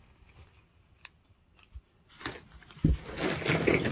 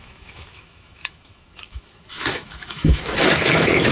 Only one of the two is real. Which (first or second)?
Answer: first